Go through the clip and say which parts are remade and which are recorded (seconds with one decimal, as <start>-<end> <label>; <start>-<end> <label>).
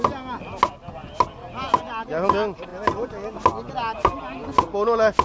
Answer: 0.0-5.2 recorded